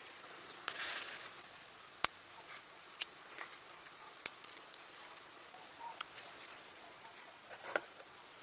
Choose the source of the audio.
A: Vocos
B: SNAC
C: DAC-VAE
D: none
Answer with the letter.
A